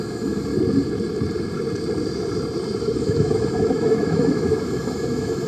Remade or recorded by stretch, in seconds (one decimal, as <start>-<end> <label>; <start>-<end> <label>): 0.0-0.5 remade; 0.5-2.8 recorded; 2.8-5.5 remade